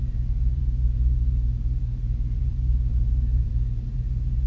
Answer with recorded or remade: remade